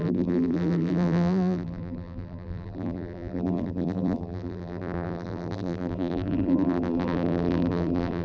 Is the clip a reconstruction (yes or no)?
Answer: yes